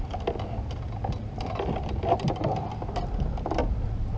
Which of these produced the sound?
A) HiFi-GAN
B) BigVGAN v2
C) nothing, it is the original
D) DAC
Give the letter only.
C